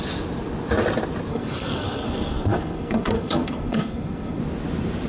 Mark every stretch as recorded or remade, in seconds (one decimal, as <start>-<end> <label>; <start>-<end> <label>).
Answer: 0.0-1.3 recorded; 1.3-4.4 remade; 4.4-5.1 recorded